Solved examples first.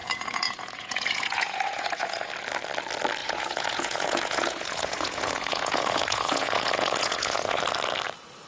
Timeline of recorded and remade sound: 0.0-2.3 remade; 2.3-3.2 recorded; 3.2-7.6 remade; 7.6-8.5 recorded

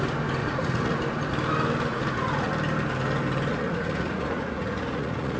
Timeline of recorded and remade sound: 0.0-0.4 recorded; 0.4-1.0 remade; 1.0-1.9 recorded; 1.9-2.5 remade; 2.5-3.5 recorded; 3.5-5.4 remade

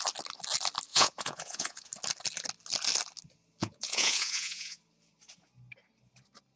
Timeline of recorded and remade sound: 0.0-0.9 recorded; 0.9-1.9 remade; 1.9-3.6 recorded; 3.6-4.8 remade; 4.8-6.6 recorded

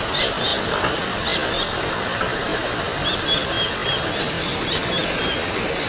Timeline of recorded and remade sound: 0.0-5.9 recorded

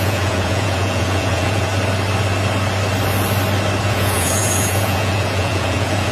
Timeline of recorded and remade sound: 0.0-1.7 remade; 1.7-3.8 recorded; 3.8-6.1 remade